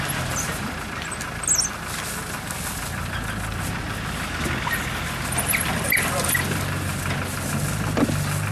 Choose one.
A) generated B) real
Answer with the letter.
B